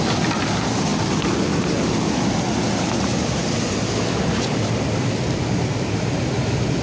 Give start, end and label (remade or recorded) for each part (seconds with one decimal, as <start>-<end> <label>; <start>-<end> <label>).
0.0-6.8 recorded

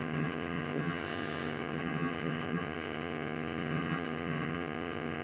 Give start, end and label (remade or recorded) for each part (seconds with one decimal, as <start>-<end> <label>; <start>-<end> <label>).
0.0-5.2 remade

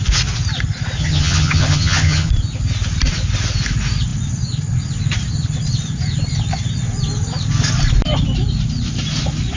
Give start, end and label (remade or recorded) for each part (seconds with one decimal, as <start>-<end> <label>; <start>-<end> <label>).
0.0-1.0 recorded; 1.0-2.3 remade; 2.3-9.6 recorded

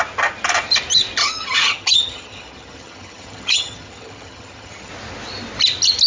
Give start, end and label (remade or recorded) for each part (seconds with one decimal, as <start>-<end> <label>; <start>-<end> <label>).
0.0-1.2 recorded; 1.2-4.9 remade; 4.9-6.1 recorded

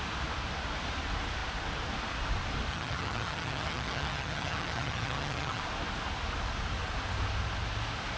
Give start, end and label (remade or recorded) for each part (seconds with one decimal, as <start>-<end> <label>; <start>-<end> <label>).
0.0-2.7 recorded; 2.7-5.6 remade; 5.6-8.2 recorded

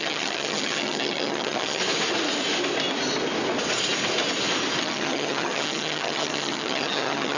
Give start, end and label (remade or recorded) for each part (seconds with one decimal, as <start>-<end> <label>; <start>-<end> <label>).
0.0-1.8 remade; 1.8-4.8 recorded; 4.8-7.4 remade

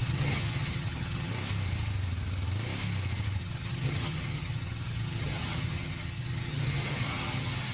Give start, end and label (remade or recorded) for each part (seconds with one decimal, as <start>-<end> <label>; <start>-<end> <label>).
0.0-1.3 remade; 1.3-3.4 recorded; 3.4-7.7 remade

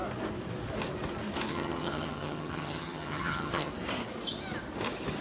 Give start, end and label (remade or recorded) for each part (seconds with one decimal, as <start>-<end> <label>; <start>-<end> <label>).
0.0-1.5 recorded; 1.5-3.7 remade; 3.7-5.2 recorded